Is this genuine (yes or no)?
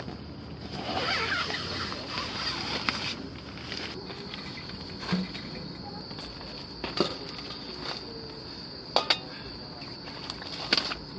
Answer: yes